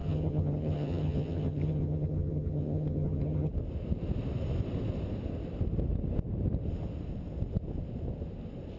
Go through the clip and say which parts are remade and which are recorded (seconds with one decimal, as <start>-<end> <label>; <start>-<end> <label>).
0.0-3.5 remade; 3.5-8.8 recorded